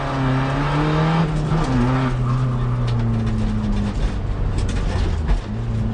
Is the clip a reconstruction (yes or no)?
no